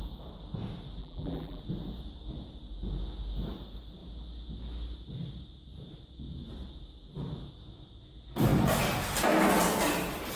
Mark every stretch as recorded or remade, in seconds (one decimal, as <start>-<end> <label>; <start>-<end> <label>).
0.0-1.0 recorded; 1.0-1.6 remade; 1.6-10.4 recorded

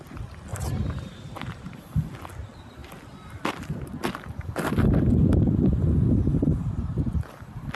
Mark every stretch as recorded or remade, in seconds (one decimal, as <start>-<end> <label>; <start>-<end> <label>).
0.0-0.5 recorded; 0.5-1.8 remade; 1.8-7.8 recorded

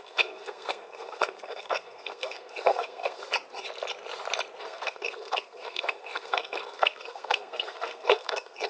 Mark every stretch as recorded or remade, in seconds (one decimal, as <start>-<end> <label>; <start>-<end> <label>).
0.0-3.2 remade; 3.2-4.6 recorded; 4.6-8.7 remade

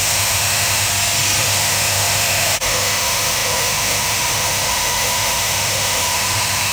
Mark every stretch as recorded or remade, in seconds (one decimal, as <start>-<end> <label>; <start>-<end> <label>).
0.0-0.9 remade; 0.9-1.4 recorded; 1.4-6.7 remade

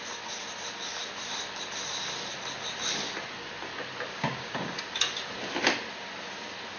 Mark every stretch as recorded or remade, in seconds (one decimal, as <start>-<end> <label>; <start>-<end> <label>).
0.0-4.1 recorded; 4.1-4.8 remade; 4.8-6.8 recorded

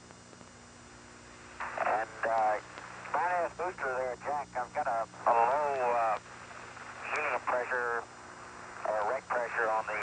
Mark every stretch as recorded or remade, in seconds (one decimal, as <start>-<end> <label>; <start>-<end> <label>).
0.0-10.0 recorded

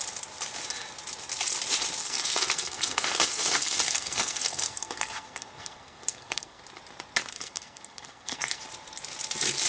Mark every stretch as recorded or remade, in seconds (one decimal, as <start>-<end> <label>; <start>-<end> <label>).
0.0-2.0 recorded; 2.0-6.6 remade; 6.6-7.3 recorded; 7.3-8.6 remade; 8.6-9.7 recorded